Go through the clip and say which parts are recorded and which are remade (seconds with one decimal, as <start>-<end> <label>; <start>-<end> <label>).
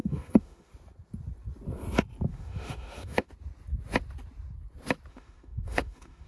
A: 0.0-0.7 remade; 0.7-2.3 recorded; 2.3-3.3 remade; 3.3-5.1 recorded; 5.1-6.3 remade